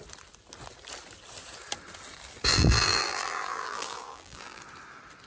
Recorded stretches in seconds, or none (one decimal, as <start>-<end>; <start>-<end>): 0.0-2.5; 4.6-5.3